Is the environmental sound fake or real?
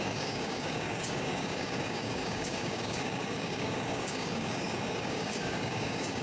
fake